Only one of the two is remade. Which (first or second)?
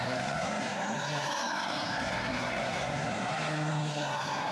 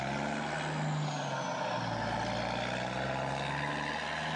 first